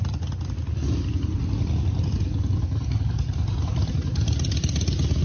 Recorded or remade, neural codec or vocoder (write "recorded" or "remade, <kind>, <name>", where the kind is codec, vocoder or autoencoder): recorded